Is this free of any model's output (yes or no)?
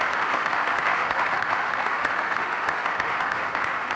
no